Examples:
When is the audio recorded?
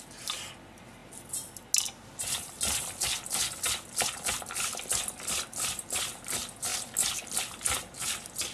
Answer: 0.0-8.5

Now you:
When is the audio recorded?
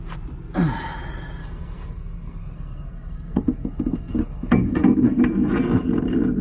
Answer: 0.0-1.4; 5.2-6.4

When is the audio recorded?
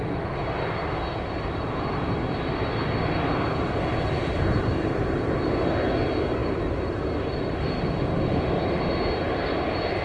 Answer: 0.0-10.0